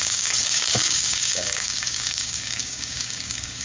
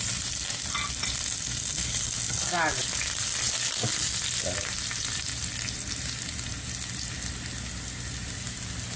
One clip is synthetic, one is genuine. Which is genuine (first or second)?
second